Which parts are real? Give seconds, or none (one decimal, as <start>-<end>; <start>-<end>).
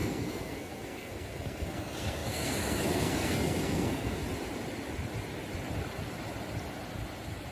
4.2-7.5